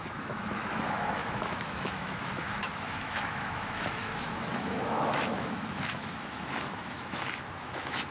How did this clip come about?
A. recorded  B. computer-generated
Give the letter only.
B